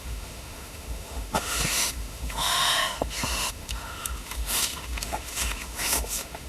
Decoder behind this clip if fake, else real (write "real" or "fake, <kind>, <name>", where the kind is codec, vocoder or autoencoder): fake, autoencoder, DAC-VAE